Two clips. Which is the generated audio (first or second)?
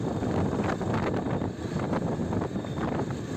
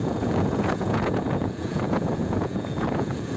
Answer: second